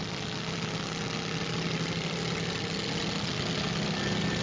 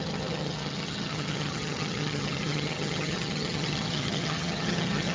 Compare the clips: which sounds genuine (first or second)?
first